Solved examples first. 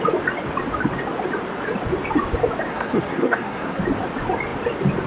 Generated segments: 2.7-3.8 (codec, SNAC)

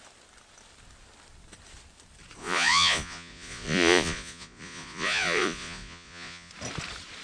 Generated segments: 2.4-6.5 (vocoder, Vocos)

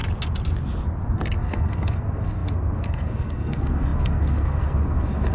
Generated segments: 1.1-5.3 (codec, SNAC)

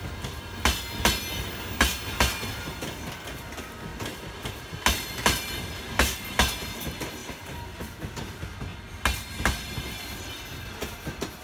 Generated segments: 7.2-8.0 (vocoder, BigVGAN v2)

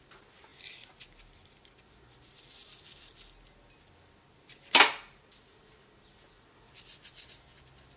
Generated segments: none

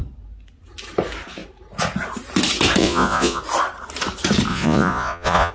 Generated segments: 2.8-3.4 (vocoder, Vocos); 4.5-5.5

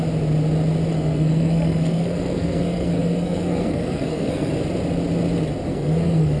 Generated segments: 0.9-4.5 (codec, SNAC); 5.7-6.4